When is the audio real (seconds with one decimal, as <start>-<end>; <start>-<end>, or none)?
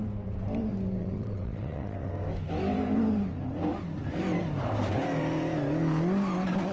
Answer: 0.0-1.0; 2.1-6.7